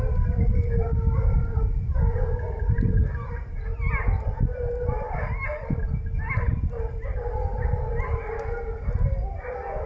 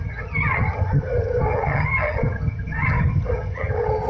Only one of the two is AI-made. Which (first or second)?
second